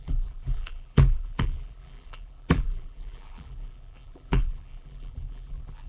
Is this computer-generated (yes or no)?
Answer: yes